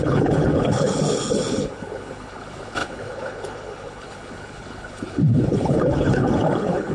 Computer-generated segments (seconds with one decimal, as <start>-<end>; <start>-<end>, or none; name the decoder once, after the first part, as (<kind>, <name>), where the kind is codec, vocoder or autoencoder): 0.0-6.9 (codec, HILCodec)